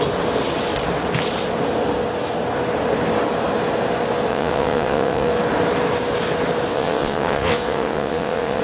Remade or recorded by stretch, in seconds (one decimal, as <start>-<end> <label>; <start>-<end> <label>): 0.0-4.3 recorded; 4.3-5.3 remade; 5.3-6.7 recorded; 6.7-8.6 remade